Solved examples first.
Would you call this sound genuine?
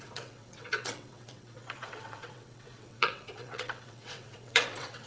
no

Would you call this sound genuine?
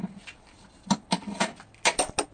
yes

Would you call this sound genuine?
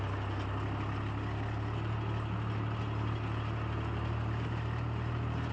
yes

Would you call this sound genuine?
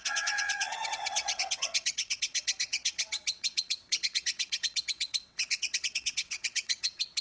no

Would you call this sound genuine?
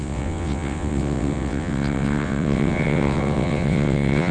no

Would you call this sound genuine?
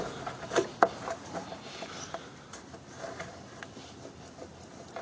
yes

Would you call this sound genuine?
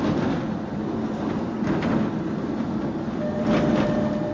yes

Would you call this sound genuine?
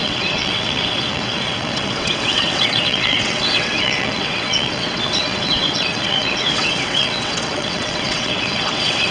no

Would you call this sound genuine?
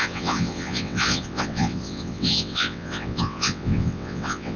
no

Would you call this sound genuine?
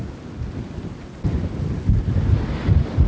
yes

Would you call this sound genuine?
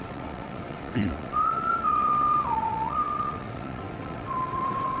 no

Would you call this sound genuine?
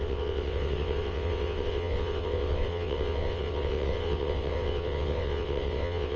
no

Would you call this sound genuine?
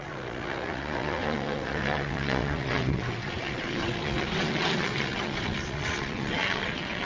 no